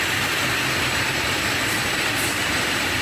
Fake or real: real